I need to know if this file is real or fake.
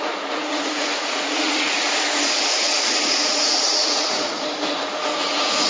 fake